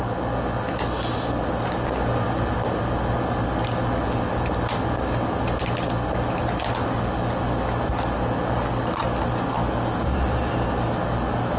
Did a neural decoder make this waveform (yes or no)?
no